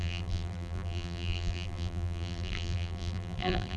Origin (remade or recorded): remade